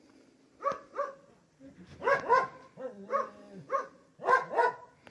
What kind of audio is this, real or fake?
real